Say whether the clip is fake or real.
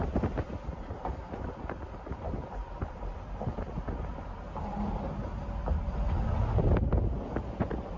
real